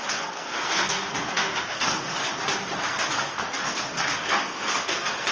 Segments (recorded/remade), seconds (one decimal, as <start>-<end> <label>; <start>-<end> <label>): 0.0-2.2 remade; 2.2-2.8 recorded; 2.8-5.3 remade